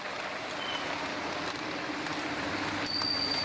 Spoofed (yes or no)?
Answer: no